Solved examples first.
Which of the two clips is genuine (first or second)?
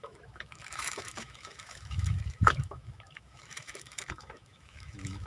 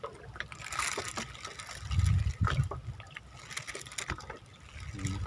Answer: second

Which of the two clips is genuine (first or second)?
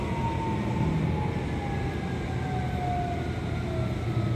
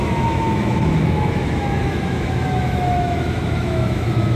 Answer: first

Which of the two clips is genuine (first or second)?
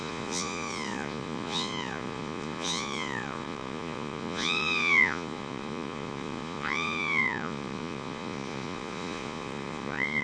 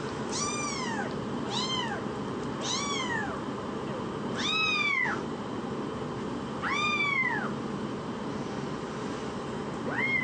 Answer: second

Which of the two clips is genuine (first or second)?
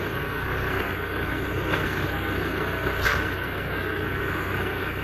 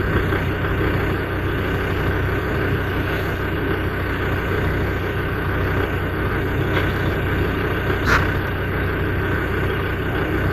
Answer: second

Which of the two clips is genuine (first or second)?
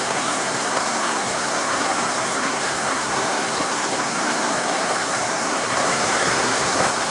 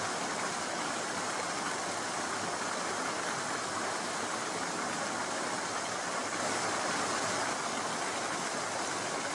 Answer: second